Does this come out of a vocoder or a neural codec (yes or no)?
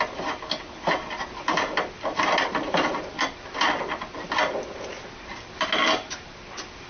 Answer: no